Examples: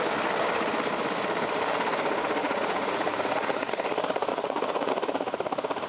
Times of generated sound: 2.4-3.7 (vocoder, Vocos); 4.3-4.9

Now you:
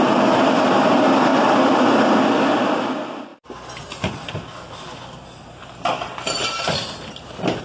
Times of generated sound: none

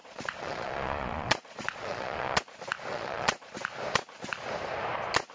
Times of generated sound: 0.0-2.4 (vocoder, Vocos); 2.9-3.5

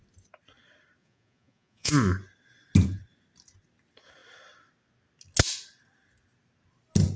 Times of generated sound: 1.0-1.9 (vocoder, Vocos)

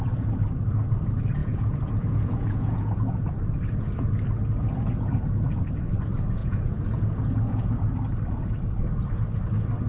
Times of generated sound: 1.4-3.3 (vocoder, Vocos); 6.4-7.8

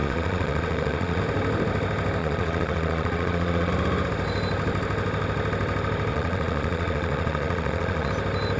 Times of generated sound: 0.0-1.2 (vocoder, Vocos); 2.2-3.7; 6.1-8.1

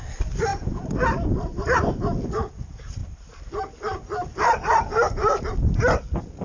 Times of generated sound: 0.5-1.0 (vocoder, Vocos)

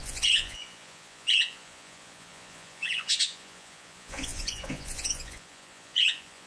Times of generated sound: 0.0-6.5 (vocoder, Vocos)